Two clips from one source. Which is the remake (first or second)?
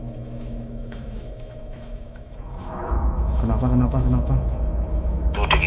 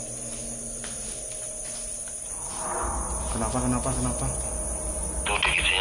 first